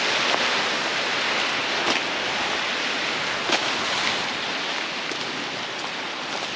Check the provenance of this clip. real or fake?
real